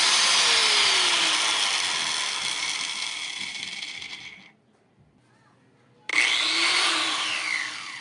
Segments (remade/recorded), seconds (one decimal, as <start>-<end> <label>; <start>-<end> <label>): 0.0-8.0 recorded